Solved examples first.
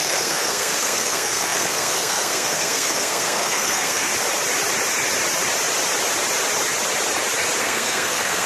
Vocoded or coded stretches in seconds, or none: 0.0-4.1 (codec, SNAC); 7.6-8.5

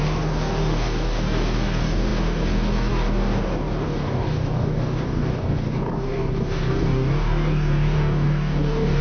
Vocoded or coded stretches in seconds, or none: 0.0-9.0 (codec, DAC)

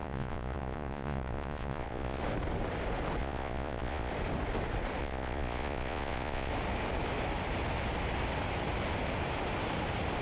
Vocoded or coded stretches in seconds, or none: 0.0-2.2 (vocoder, Vocos); 3.2-4.1; 5.0-6.5

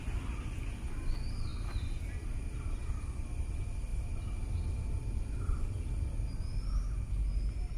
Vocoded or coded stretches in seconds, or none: none

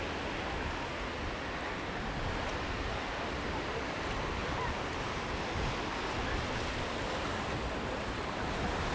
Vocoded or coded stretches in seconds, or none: none